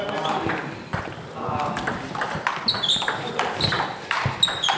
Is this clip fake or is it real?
real